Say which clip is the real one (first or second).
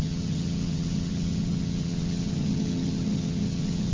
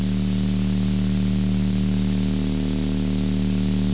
second